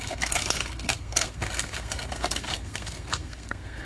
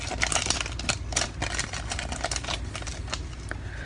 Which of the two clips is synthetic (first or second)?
first